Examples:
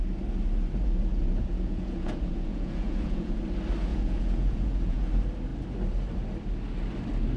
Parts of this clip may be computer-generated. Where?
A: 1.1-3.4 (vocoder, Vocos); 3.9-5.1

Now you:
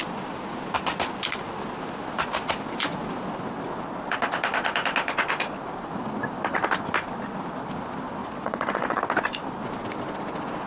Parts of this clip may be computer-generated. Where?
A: 8.2-9.0 (vocoder, Vocos)

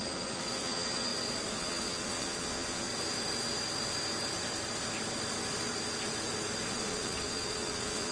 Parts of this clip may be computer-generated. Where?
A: 0.0-1.1 (vocoder, Vocos); 1.6-2.9; 6.7-8.1

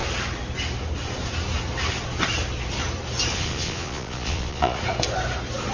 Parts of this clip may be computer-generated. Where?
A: 3.3-4.8 (vocoder, Vocos)

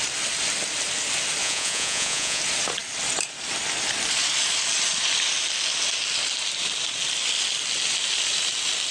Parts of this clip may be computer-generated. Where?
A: 1.4-2.4 (vocoder, Vocos)

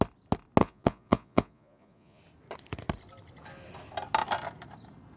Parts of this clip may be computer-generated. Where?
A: 0.6-2.2 (vocoder, Vocos)